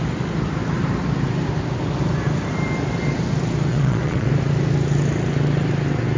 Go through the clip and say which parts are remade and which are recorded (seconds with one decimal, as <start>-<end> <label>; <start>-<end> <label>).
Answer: 0.0-3.7 recorded; 3.7-4.3 remade; 4.3-6.2 recorded